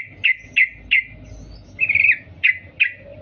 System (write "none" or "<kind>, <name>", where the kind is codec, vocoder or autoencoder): none